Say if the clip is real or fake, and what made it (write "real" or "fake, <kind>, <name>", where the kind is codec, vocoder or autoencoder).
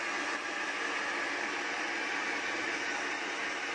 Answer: real